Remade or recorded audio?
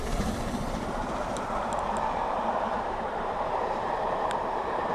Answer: remade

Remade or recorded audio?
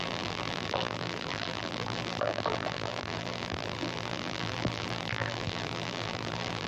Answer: remade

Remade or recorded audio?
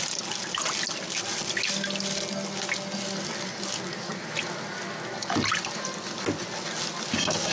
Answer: recorded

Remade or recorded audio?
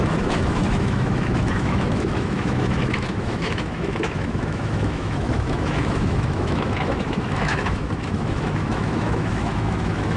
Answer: remade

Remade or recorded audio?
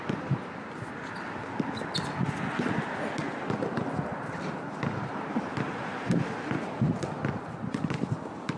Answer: recorded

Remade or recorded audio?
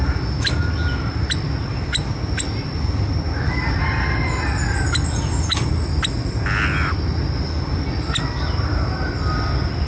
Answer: recorded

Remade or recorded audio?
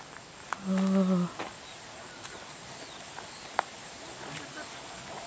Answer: recorded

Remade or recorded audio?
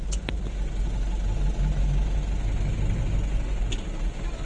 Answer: recorded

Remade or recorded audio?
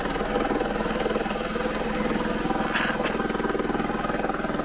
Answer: recorded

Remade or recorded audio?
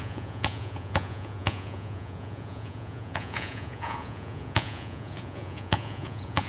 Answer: remade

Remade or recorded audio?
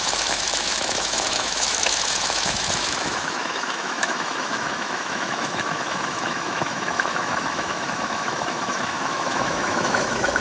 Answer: remade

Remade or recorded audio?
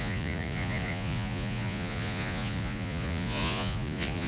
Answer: remade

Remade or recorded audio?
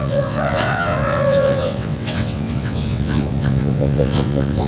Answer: remade